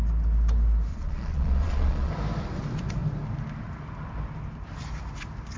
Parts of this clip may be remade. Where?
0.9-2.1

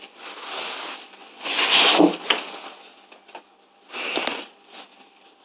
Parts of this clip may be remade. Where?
1.2-2.0

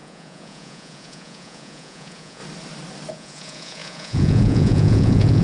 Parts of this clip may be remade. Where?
0.0-2.4; 3.1-5.4

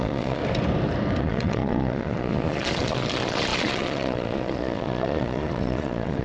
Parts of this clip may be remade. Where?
0.0-0.4; 1.2-6.2